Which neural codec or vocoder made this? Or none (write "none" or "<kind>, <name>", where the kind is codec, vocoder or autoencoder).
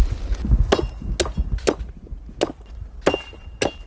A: none